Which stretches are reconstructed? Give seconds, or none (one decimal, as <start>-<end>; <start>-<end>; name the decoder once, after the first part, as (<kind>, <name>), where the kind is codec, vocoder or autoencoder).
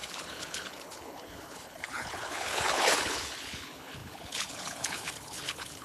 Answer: 0.0-5.8 (codec, HILCodec)